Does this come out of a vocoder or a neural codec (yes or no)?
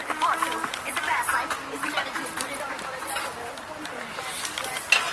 no